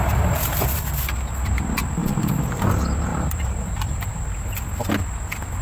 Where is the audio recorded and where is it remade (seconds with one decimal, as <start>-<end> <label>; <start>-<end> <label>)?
0.0-1.0 remade; 1.0-2.0 recorded; 2.0-2.6 remade; 2.6-3.1 recorded; 3.1-4.1 remade; 4.1-5.6 recorded